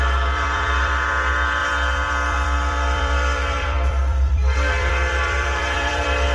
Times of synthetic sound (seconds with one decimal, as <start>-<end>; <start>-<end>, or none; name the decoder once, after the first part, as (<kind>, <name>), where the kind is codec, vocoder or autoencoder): 0.0-6.3 (vocoder, BigVGAN v2)